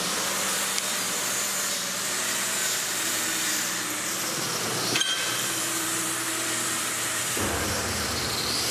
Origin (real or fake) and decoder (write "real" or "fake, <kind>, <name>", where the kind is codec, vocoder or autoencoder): fake, vocoder, BigVGAN v2